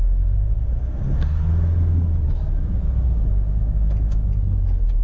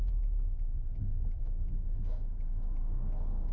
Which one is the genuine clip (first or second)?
first